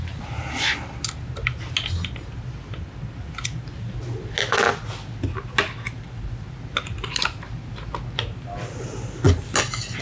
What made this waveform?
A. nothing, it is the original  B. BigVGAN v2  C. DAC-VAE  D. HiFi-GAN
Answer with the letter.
A